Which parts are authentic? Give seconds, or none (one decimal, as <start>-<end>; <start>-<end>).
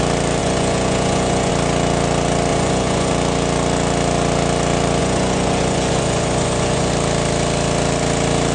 0.0-0.4; 1.5-2.5; 3.1-5.0; 6.9-8.5